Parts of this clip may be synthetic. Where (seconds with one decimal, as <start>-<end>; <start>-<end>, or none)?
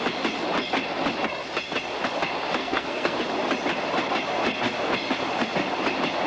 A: 2.6-3.2